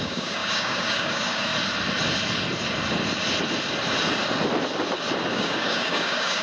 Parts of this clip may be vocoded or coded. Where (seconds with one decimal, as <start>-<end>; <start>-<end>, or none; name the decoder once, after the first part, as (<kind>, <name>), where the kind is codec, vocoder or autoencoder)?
0.0-1.5 (codec, DAC); 5.3-6.4